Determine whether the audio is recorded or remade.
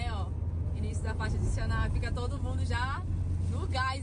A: recorded